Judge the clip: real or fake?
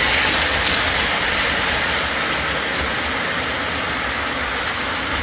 real